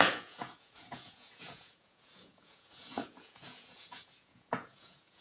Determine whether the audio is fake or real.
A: fake